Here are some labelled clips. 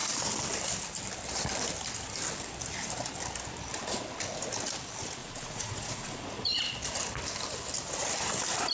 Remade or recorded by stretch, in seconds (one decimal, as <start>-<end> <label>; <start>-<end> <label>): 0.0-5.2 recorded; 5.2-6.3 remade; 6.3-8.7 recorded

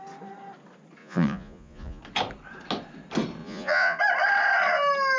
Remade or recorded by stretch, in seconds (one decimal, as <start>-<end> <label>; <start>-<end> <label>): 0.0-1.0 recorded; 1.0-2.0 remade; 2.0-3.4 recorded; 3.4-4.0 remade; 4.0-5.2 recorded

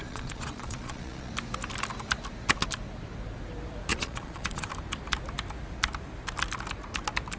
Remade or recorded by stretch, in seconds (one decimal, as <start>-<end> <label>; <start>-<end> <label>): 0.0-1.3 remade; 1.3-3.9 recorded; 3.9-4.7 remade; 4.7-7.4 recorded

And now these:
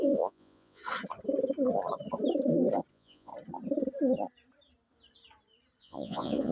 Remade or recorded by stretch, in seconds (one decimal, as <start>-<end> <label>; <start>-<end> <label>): 0.0-0.8 remade; 0.8-2.9 recorded; 2.9-3.3 remade; 3.3-5.8 recorded; 5.8-6.5 remade

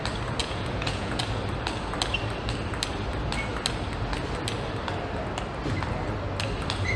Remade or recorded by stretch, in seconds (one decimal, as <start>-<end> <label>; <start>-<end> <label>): 0.0-0.4 recorded; 0.4-1.2 remade; 1.2-7.0 recorded